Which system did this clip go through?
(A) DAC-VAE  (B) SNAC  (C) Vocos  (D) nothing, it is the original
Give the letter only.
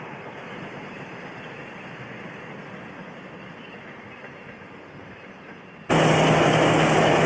D